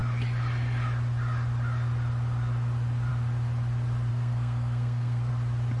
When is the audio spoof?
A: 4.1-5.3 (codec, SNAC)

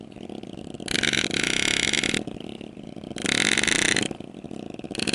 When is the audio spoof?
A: 3.2-3.9 (vocoder, BigVGAN v2)